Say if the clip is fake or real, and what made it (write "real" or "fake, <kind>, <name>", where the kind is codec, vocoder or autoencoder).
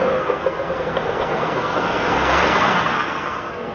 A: fake, codec, SNAC